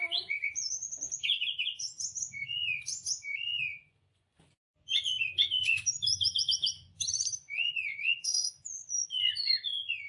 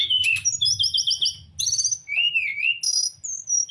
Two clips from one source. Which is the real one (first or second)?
second